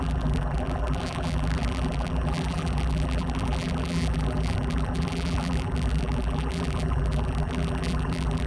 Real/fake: fake